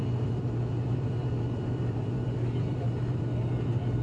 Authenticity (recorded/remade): remade